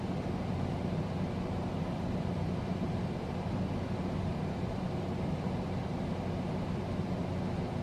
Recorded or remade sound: remade